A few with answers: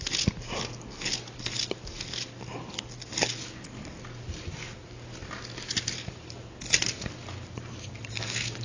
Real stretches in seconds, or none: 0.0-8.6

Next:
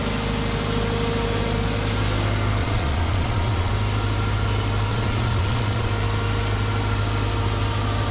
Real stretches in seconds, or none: 0.0-2.6; 3.7-4.9; 5.9-8.1

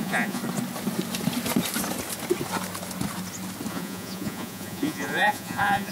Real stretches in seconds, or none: 0.4-3.7

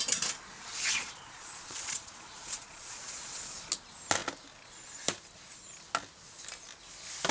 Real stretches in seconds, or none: 0.0-0.7; 3.7-7.3

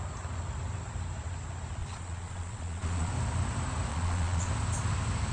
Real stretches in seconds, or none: 0.0-1.8; 3.1-3.9; 4.5-5.3

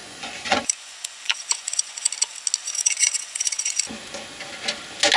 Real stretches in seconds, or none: 2.1-2.6; 3.8-5.2

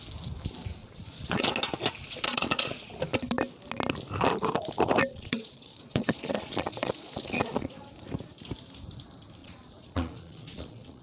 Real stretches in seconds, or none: 0.0-0.8; 1.5-2.0; 2.9-5.1; 7.7-9.4